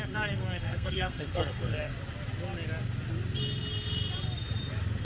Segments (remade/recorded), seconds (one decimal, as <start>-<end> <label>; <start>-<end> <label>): 0.0-1.9 remade; 1.9-5.0 recorded